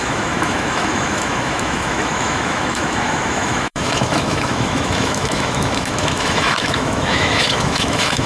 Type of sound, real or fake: fake